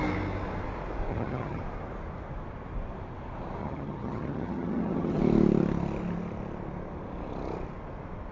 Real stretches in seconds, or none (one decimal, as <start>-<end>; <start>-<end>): 0.0-1.1; 1.6-3.6; 5.2-8.3